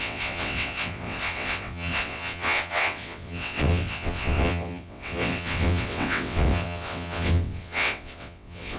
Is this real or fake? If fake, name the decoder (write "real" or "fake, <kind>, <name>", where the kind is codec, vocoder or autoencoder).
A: fake, vocoder, WaveNeXt